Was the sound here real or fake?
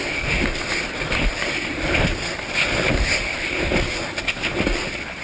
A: real